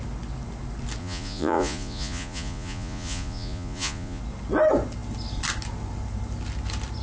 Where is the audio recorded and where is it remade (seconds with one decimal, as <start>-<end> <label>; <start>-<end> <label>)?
0.0-1.0 recorded; 1.0-4.2 remade; 4.2-7.0 recorded

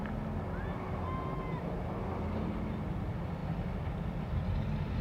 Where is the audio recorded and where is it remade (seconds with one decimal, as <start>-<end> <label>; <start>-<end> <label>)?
0.0-5.0 recorded